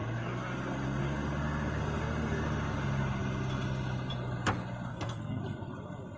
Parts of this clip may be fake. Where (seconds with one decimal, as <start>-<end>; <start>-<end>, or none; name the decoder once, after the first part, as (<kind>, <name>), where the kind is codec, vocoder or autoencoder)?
4.9-5.4 (codec, SNAC)